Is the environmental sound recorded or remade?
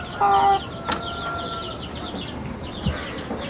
recorded